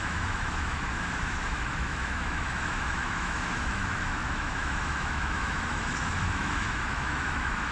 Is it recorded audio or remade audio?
remade